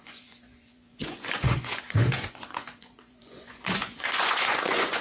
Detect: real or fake fake